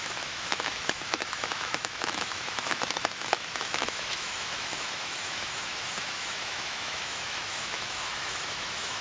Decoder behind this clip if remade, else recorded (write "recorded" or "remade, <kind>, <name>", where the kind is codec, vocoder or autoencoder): remade, autoencoder, DAC-VAE